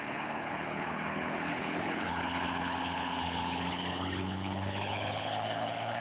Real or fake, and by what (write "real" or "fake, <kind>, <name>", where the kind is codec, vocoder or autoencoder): fake, codec, HILCodec